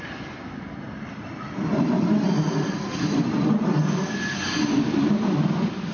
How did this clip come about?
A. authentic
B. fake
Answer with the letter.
A